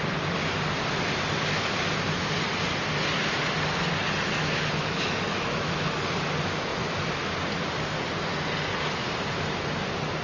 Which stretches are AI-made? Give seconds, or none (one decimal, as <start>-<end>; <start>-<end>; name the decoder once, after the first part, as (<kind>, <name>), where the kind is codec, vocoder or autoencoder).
4.4-6.0 (autoencoder, DAC-VAE)

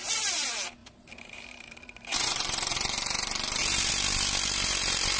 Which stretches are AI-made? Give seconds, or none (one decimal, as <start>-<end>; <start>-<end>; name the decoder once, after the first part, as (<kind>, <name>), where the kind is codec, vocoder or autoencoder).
0.8-3.9 (vocoder, BigVGAN v2)

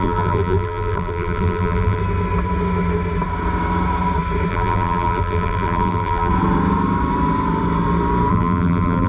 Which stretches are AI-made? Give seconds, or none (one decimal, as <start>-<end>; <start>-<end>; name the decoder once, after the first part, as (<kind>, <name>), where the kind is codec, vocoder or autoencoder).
0.0-2.0 (vocoder, BigVGAN v2); 4.5-6.3; 8.3-9.1

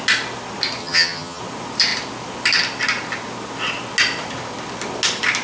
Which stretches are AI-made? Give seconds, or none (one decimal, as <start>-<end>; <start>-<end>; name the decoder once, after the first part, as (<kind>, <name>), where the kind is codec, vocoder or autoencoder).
0.8-1.4 (vocoder, HiFi-GAN)

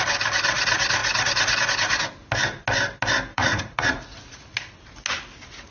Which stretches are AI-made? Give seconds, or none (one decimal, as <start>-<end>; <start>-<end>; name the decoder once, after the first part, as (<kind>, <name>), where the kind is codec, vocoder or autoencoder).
3.3-4.5 (vocoder, Vocos)

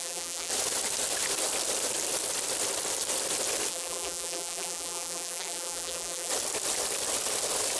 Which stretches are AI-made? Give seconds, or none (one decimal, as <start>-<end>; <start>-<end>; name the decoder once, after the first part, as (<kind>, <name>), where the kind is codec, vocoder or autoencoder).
0.0-0.5 (vocoder, BigVGAN v2); 3.7-6.3

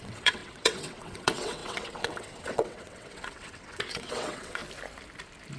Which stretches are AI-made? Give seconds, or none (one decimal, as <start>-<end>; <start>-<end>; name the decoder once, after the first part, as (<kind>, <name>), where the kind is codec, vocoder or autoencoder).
0.0-4.6 (vocoder, WaveNeXt)